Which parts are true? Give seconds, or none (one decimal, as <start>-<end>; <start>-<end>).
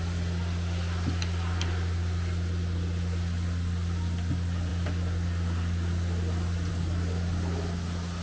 0.0-8.2